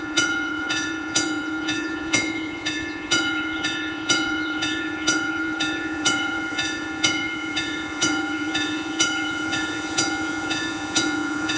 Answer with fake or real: fake